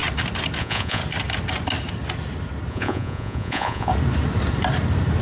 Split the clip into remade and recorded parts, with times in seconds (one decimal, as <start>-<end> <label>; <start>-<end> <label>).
0.0-0.6 recorded; 0.6-1.0 remade; 1.0-2.7 recorded; 2.7-3.9 remade; 3.9-5.2 recorded